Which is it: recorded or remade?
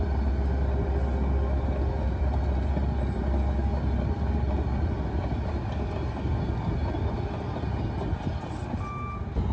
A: recorded